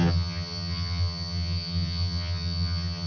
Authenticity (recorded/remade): remade